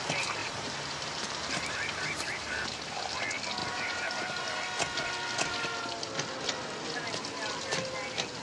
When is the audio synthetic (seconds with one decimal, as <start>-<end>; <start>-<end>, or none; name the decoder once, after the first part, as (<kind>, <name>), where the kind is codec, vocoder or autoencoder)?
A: 0.4-3.0 (vocoder, BigVGAN v2); 3.6-4.4